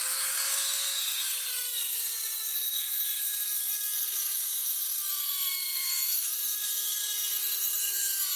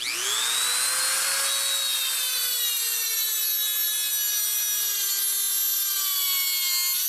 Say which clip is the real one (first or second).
second